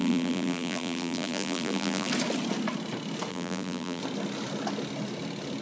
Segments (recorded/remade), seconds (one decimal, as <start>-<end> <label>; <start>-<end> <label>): 0.0-2.1 remade; 2.1-3.3 recorded; 3.3-4.0 remade; 4.0-5.6 recorded